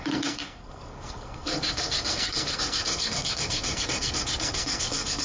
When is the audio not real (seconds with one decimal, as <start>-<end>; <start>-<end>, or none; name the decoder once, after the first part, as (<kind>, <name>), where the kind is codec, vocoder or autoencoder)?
0.0-5.2 (codec, SNAC)